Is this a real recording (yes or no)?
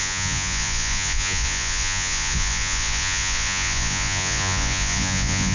no